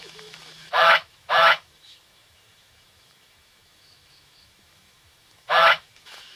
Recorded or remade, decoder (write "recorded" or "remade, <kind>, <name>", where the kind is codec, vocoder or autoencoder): remade, autoencoder, DAC-VAE